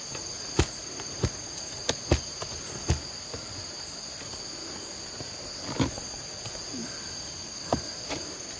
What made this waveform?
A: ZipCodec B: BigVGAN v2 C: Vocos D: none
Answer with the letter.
D